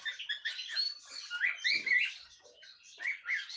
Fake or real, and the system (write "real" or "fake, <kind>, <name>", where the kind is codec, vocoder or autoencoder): real